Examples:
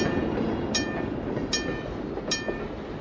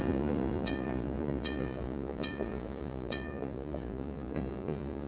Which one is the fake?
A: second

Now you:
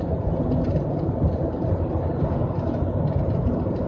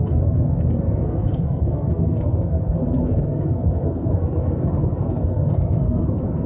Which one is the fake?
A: second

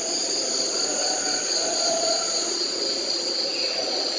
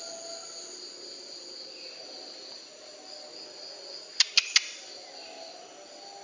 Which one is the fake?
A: first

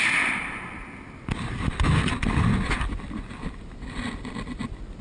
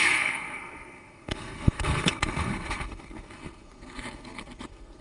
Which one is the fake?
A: second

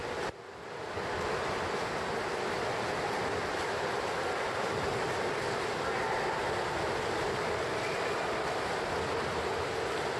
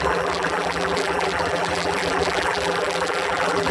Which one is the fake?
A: second